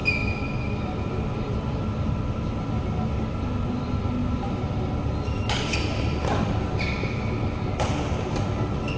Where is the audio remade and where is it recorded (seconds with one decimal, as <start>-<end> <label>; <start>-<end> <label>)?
0.0-9.0 recorded